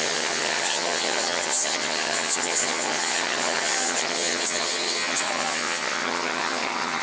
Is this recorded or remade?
remade